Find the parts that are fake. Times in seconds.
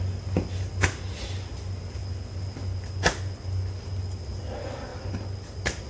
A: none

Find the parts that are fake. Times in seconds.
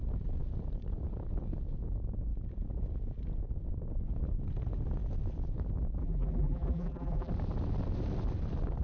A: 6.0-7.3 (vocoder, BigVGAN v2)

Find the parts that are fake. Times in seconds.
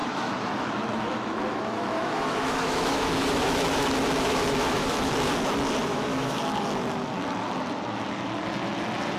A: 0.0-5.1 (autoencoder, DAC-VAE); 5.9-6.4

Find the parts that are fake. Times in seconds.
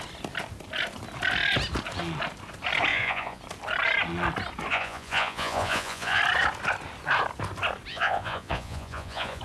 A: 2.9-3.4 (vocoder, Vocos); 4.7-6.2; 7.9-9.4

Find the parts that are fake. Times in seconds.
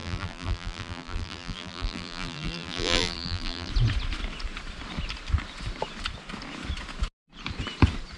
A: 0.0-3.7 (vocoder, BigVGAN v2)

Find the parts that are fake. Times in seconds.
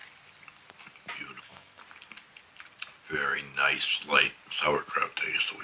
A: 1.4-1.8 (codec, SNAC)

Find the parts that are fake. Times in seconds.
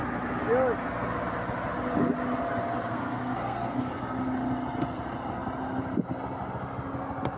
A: 2.9-3.9 (codec, SNAC)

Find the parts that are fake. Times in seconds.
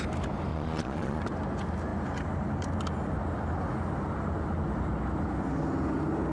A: 0.5-1.2 (vocoder, Vocos)